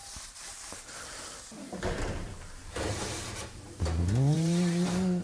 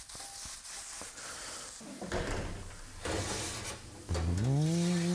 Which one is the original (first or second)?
second